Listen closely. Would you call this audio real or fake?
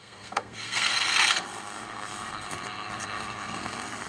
fake